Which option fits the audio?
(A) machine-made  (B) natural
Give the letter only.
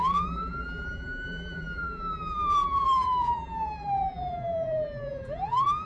A